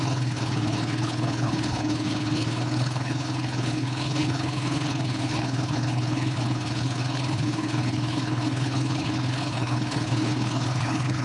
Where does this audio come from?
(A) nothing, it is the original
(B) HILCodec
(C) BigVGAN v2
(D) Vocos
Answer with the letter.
B